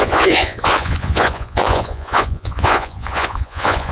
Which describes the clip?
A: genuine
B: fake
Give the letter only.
B